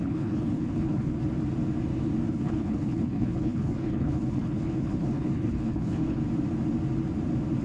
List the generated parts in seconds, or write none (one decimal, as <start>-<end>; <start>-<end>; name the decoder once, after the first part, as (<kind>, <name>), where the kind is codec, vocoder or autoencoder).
0.0-1.2 (codec, HILCodec); 2.3-6.2